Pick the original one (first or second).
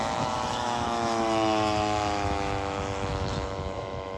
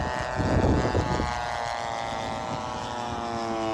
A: second